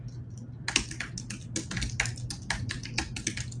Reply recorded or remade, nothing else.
recorded